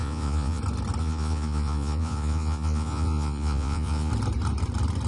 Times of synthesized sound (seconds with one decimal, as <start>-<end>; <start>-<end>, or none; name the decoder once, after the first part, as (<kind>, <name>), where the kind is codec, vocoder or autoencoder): 0.0-0.6 (vocoder, Vocos); 1.0-4.1